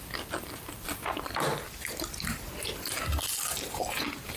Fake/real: real